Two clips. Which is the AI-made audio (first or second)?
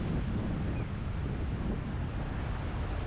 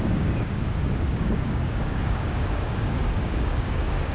second